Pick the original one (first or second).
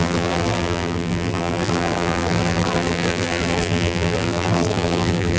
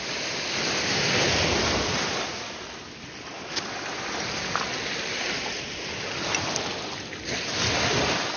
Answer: second